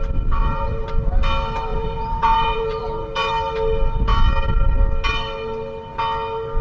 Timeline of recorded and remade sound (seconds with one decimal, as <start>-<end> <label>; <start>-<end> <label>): 0.0-0.4 recorded; 0.4-0.9 remade; 0.9-1.7 recorded; 1.7-3.3 remade; 3.3-6.6 recorded